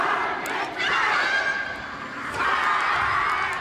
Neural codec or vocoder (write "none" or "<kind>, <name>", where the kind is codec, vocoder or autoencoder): none